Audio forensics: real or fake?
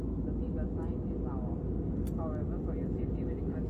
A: real